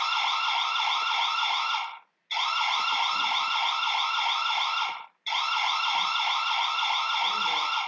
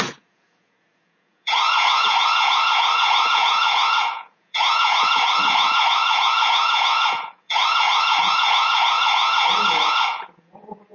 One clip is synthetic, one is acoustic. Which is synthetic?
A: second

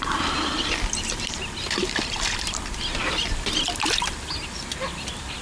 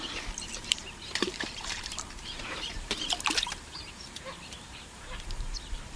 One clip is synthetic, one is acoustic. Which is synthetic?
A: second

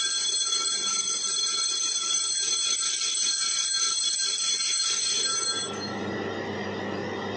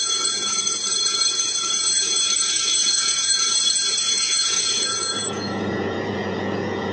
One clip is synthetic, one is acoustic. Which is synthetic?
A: second